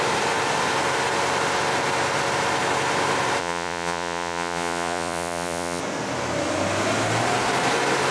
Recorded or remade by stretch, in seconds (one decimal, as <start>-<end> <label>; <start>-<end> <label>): 0.0-3.4 recorded; 3.4-5.8 remade; 5.8-8.1 recorded